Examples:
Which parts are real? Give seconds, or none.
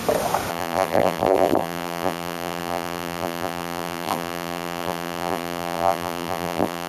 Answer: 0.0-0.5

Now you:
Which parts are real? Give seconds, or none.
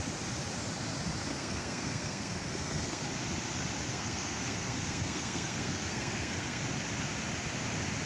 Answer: 0.0-1.3; 3.1-3.9; 6.6-8.1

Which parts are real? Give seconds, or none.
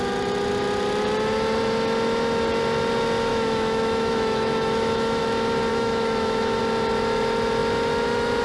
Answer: 0.0-3.3; 5.2-5.7; 6.6-8.4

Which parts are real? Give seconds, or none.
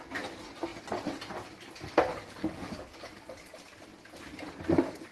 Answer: 0.0-2.4; 3.5-5.1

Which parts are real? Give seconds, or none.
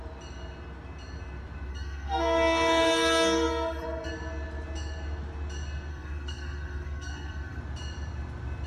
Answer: 0.0-1.7; 4.1-5.9; 7.6-8.7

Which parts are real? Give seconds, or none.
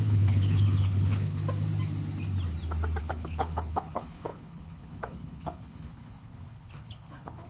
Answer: 1.4-3.0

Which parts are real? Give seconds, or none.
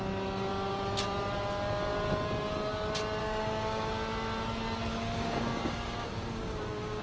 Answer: 0.0-3.2; 3.9-4.9